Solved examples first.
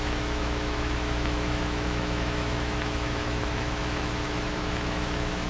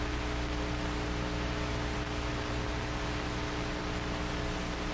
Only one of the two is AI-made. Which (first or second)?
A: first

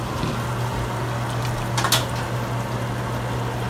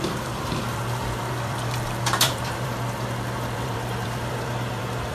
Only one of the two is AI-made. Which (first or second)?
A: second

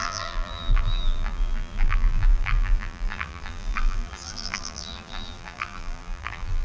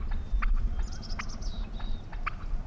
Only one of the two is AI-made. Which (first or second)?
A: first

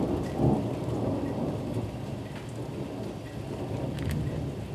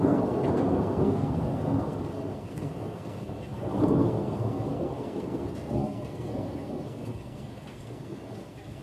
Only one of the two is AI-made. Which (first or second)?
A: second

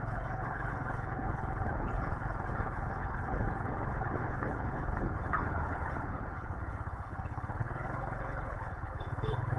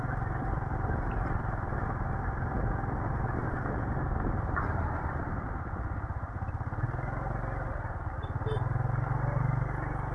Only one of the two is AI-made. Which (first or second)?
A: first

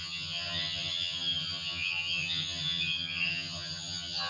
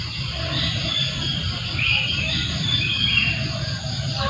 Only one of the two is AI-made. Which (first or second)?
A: first